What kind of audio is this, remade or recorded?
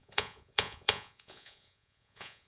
remade